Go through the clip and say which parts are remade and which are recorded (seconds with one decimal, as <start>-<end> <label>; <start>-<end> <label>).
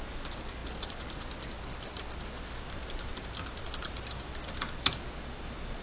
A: 0.0-5.8 recorded